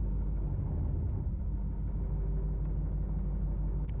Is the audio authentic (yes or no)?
yes